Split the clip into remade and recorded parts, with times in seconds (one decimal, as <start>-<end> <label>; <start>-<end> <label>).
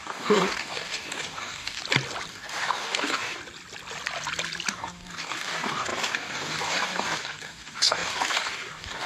0.0-1.8 remade; 1.8-2.3 recorded; 2.3-3.4 remade; 3.4-4.7 recorded; 4.7-9.1 remade